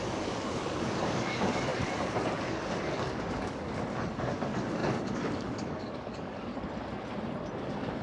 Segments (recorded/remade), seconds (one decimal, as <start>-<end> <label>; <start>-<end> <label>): 0.0-6.5 remade; 6.5-7.6 recorded; 7.6-8.0 remade